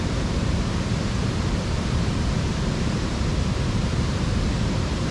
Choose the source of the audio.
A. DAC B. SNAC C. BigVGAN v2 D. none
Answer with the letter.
C